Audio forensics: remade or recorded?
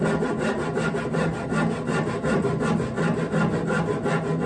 recorded